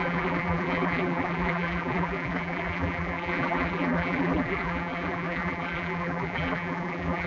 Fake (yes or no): yes